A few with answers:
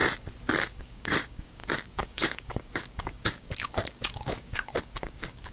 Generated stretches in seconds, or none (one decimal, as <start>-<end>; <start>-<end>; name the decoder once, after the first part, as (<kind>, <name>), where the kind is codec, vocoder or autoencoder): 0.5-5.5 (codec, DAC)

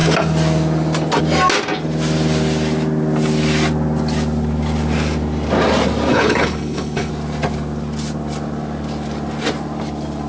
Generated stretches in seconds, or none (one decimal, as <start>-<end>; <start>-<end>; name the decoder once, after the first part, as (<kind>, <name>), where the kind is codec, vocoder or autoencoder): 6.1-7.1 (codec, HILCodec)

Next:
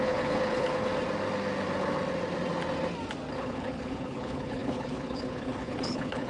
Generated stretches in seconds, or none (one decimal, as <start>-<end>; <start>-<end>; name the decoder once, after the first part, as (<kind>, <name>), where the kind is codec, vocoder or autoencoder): 0.0-0.9 (codec, HILCodec); 3.4-6.3

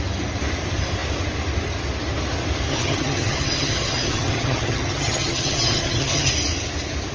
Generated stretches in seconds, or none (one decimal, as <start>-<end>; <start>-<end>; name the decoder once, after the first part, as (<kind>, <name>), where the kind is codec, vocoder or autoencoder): 2.7-6.3 (vocoder, HiFi-GAN)